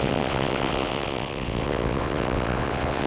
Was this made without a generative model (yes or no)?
no